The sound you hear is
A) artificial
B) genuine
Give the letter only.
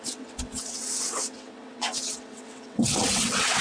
A